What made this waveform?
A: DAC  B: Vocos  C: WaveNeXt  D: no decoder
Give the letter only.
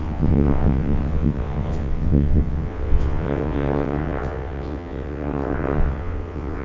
C